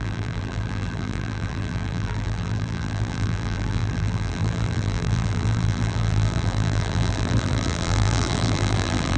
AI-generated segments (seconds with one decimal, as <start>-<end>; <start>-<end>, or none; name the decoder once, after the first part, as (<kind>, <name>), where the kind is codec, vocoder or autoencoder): 0.0-9.2 (vocoder, BigVGAN v2)